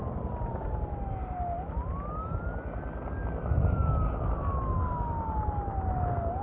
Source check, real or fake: real